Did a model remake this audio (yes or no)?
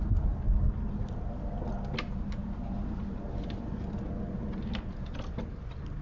no